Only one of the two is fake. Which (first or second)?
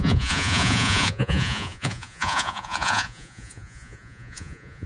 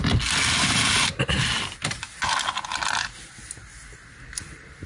first